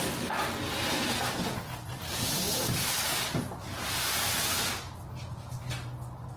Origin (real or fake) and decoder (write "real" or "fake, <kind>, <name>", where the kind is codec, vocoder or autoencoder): real